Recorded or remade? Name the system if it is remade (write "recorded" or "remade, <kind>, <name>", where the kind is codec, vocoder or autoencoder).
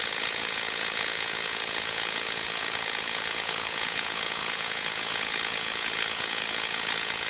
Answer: remade, vocoder, Vocos